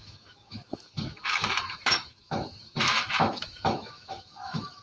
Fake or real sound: fake